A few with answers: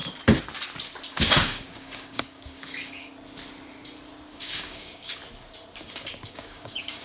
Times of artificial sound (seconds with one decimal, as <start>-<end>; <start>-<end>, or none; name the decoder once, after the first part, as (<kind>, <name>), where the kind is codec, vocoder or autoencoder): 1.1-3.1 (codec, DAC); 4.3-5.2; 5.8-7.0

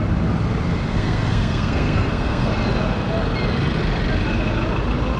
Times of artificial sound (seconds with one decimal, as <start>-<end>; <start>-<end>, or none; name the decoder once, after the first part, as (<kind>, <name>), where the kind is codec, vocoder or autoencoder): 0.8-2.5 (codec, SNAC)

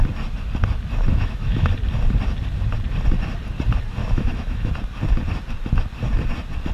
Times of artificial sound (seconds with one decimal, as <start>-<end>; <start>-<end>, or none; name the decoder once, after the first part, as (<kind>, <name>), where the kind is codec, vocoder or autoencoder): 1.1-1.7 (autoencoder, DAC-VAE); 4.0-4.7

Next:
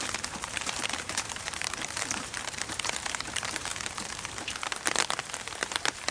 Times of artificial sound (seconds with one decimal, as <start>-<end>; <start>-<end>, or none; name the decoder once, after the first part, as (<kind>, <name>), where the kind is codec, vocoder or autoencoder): 0.0-3.7 (vocoder, BigVGAN v2); 5.4-6.1

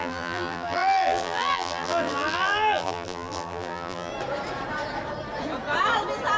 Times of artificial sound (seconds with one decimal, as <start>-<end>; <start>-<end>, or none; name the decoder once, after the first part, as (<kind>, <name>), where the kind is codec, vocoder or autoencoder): 0.0-4.1 (vocoder, BigVGAN v2)

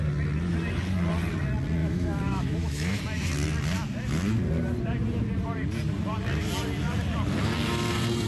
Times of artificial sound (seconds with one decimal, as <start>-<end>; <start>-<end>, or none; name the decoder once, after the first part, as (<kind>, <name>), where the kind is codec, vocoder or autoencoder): 1.8-3.0 (autoencoder, DAC-VAE)

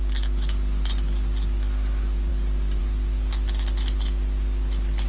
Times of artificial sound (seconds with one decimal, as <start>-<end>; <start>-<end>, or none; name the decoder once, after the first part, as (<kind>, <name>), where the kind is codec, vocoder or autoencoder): 2.3-2.8 (vocoder, BigVGAN v2)